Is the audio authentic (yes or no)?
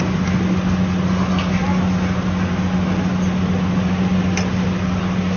yes